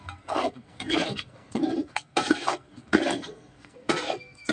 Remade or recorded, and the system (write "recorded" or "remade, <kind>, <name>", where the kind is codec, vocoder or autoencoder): remade, codec, SNAC